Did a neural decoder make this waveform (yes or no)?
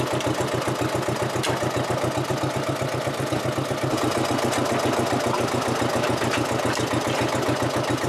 no